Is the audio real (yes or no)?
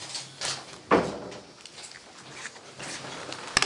yes